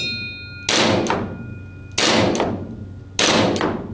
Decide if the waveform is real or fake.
real